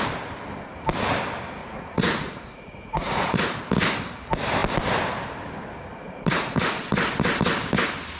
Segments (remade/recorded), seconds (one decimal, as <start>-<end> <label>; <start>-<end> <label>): 0.0-1.6 recorded; 1.6-3.6 remade; 3.6-5.9 recorded; 5.9-6.8 remade; 6.8-8.2 recorded